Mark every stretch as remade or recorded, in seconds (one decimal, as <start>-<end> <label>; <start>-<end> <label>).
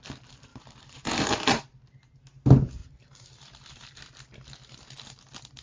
0.0-0.5 recorded; 0.5-1.4 remade; 1.4-2.8 recorded; 2.8-4.0 remade; 4.0-5.6 recorded